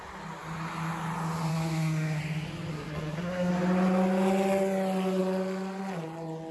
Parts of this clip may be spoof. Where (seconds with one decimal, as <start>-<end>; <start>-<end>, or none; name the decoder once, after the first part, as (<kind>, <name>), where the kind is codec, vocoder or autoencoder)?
1.5-2.2 (codec, SNAC); 2.7-3.5